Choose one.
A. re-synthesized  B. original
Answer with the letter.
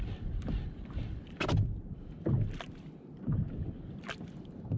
B